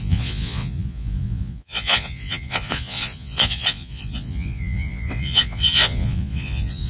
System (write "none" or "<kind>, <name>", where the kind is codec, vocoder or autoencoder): vocoder, Vocos